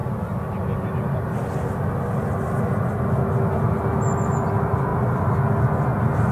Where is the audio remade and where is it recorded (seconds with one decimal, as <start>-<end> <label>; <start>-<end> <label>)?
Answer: 0.0-6.3 recorded